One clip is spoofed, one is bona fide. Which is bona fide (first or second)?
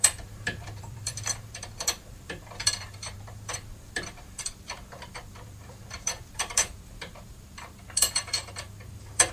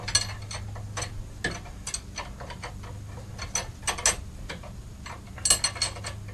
second